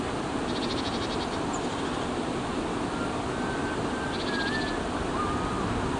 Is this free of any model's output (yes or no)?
yes